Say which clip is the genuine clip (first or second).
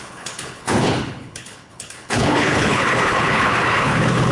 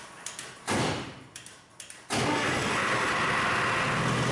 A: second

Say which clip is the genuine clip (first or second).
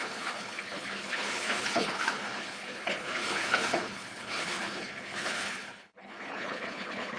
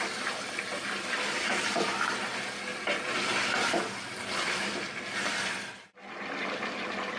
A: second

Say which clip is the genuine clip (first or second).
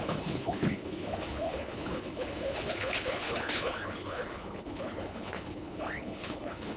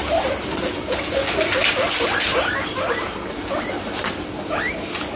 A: second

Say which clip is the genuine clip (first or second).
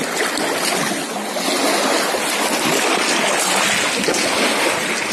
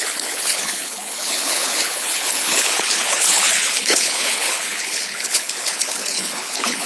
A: first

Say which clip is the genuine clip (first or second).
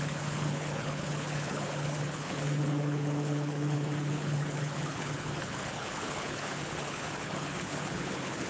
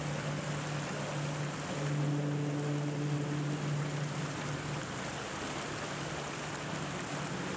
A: second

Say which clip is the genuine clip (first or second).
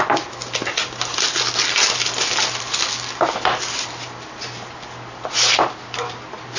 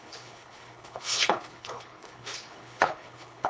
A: first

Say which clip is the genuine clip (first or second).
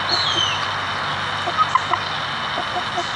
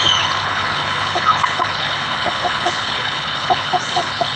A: first